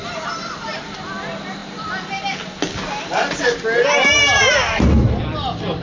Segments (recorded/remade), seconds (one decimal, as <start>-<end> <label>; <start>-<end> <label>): 0.0-5.8 recorded